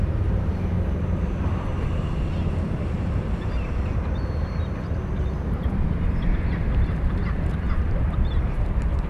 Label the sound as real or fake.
fake